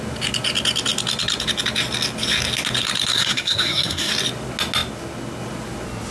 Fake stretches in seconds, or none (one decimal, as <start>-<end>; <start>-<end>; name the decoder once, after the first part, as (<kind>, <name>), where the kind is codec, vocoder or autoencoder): 3.1-4.1 (codec, SNAC)